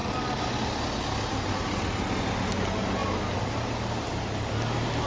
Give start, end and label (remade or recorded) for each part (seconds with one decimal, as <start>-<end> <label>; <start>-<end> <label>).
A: 0.0-5.1 recorded